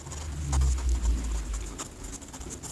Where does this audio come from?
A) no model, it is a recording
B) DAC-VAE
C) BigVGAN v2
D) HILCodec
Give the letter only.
A